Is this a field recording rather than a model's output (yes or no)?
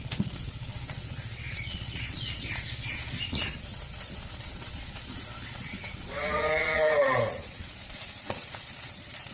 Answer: no